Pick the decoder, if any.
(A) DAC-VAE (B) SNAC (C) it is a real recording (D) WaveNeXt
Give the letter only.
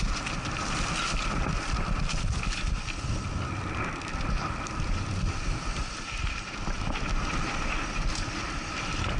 C